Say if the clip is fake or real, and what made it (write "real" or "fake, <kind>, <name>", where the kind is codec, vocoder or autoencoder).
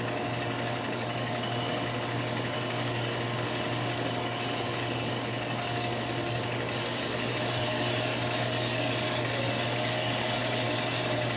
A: fake, codec, DAC